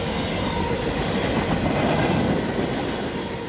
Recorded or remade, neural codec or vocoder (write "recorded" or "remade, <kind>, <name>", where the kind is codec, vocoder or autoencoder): recorded